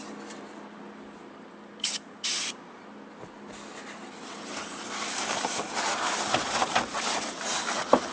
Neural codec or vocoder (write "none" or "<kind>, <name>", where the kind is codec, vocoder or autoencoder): none